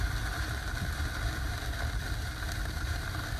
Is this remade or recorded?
recorded